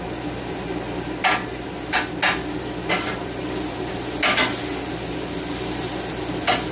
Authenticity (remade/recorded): recorded